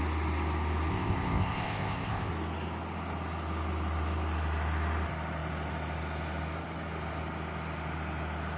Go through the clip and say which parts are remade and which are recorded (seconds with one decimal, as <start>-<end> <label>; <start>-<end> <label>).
0.0-0.9 recorded; 0.9-2.3 remade; 2.3-8.6 recorded